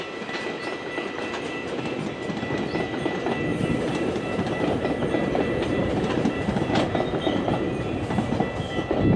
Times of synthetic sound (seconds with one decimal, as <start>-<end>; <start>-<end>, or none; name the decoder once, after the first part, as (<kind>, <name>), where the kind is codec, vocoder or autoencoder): 3.5-4.9 (vocoder, BigVGAN v2); 5.8-6.6